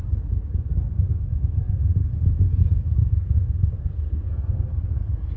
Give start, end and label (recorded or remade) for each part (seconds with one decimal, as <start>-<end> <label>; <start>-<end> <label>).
0.0-0.9 recorded; 0.9-1.9 remade; 1.9-3.0 recorded; 3.0-5.4 remade